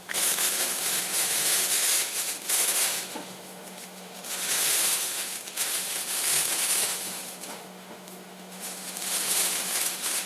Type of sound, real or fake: fake